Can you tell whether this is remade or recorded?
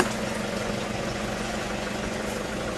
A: remade